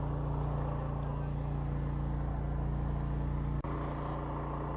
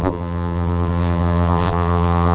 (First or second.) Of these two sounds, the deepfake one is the second